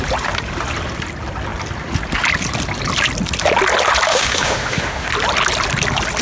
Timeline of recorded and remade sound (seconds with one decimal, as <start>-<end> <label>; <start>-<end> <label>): 0.0-4.1 recorded; 4.1-5.1 remade; 5.1-6.2 recorded